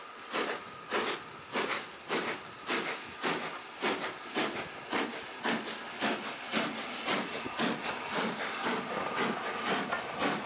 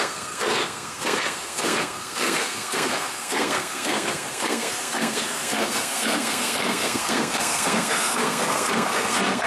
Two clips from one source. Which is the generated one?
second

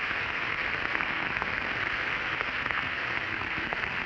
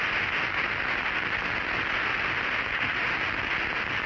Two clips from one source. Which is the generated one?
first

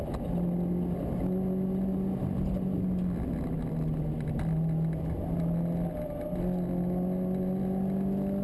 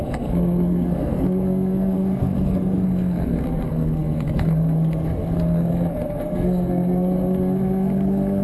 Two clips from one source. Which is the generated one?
second